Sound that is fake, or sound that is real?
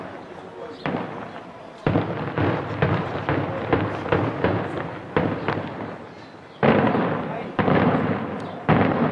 real